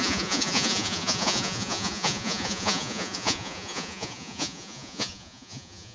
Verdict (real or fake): fake